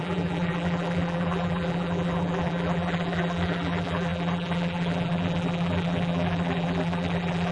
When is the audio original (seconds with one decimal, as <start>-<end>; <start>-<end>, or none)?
none